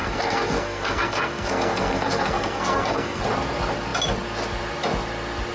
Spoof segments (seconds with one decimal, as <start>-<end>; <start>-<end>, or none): 0.0-3.2